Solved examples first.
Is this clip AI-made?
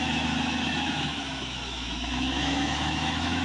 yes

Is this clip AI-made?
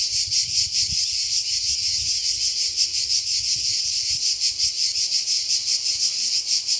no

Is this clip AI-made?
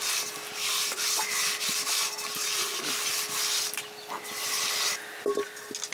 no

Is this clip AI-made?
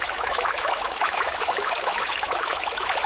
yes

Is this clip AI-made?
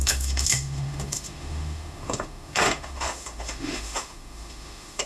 yes